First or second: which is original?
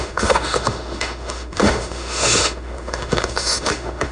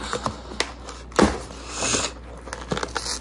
second